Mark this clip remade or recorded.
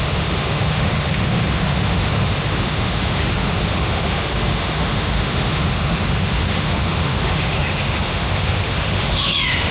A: remade